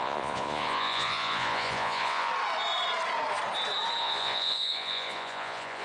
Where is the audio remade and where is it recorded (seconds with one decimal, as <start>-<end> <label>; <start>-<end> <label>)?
0.0-2.3 remade; 2.3-4.0 recorded; 4.0-5.8 remade